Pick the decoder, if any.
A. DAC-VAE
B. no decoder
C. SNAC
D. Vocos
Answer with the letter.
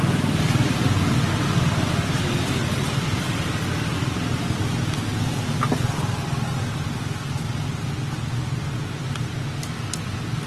B